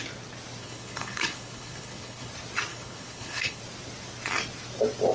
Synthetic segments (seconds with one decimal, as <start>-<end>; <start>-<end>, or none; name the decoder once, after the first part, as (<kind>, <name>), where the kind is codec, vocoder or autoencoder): 0.6-2.3 (codec, HILCodec); 2.7-3.6

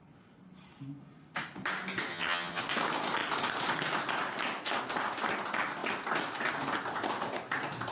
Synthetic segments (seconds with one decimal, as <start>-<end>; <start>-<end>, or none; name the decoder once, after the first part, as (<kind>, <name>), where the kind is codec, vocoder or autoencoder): 2.1-2.6 (vocoder, HiFi-GAN)

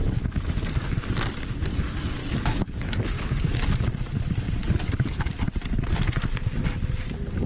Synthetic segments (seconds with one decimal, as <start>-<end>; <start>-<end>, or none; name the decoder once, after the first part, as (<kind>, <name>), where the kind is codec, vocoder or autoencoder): 2.2-3.6 (codec, DAC); 4.6-5.3

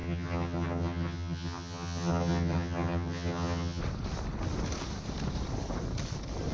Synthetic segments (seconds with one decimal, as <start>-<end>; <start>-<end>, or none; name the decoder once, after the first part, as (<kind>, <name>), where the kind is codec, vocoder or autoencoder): 0.0-3.8 (vocoder, HiFi-GAN)

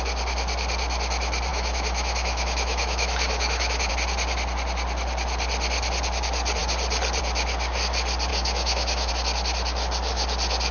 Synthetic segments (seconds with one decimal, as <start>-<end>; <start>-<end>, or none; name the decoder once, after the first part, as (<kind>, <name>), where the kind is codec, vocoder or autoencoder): 1.5-3.9 (autoencoder, DAC-VAE); 8.3-9.1

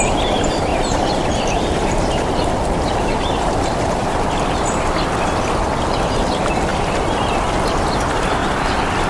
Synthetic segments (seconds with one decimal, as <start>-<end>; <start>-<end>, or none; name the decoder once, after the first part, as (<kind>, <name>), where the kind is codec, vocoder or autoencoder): 0.7-5.4 (vocoder, BigVGAN v2); 6.7-7.5; 8.4-9.1

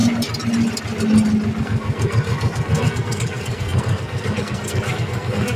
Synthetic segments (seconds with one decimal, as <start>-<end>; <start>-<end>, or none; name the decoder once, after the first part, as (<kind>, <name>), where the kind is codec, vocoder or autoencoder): 1.6-5.6 (codec, SNAC)